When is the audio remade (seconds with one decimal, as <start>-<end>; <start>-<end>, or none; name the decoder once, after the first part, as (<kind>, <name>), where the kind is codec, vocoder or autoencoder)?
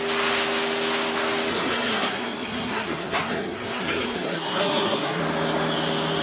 1.5-5.2 (codec, SNAC)